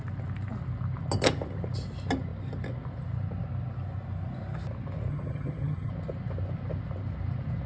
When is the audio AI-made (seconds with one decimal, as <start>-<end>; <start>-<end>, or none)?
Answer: 5.1-5.9